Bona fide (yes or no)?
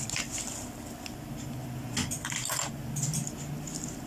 yes